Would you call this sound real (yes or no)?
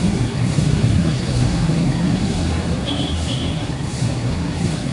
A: no